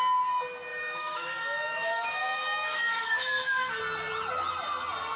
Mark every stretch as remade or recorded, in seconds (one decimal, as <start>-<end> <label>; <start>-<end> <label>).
0.0-0.7 recorded; 0.7-3.8 remade; 3.8-5.2 recorded